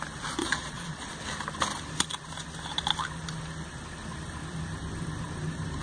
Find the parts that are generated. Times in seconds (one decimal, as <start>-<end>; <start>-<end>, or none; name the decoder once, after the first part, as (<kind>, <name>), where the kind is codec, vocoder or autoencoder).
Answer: 0.4-1.1 (vocoder, Vocos)